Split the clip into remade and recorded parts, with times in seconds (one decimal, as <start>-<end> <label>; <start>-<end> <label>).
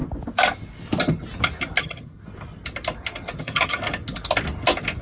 0.0-1.8 recorded; 1.8-2.2 remade; 2.2-3.4 recorded; 3.4-3.8 remade; 3.8-5.0 recorded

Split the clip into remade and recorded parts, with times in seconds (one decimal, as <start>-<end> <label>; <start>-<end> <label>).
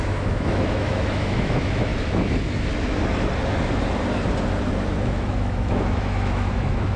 0.0-1.9 remade; 1.9-4.9 recorded; 4.9-7.0 remade